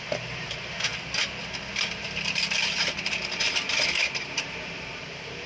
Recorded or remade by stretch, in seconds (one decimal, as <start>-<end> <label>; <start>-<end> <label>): 0.0-0.9 remade; 0.9-1.7 recorded; 1.7-5.5 remade